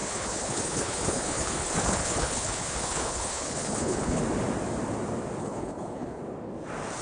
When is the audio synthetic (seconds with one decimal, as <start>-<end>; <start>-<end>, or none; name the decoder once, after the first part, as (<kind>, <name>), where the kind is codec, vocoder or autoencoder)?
0.0-4.2 (codec, HILCodec); 5.4-6.2